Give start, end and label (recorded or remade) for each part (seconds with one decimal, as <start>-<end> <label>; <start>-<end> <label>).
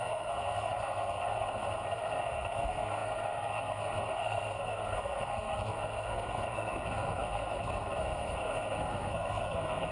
0.0-9.9 remade